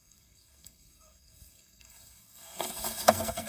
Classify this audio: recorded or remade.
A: remade